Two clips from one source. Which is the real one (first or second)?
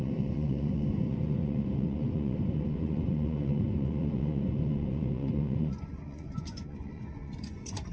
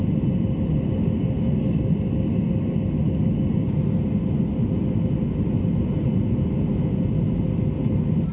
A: second